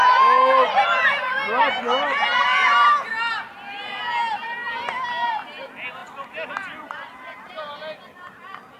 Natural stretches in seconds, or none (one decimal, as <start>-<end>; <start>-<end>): 0.0-2.3; 3.1-8.8